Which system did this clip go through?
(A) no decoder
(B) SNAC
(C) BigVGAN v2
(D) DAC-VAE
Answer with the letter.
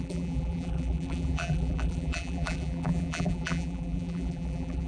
C